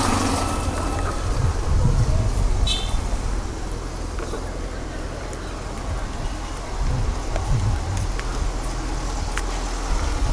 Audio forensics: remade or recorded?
recorded